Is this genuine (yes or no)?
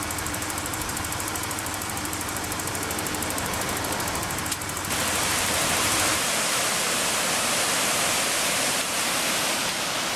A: no